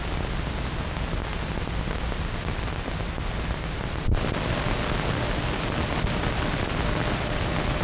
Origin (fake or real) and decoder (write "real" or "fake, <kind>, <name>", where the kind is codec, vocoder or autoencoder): real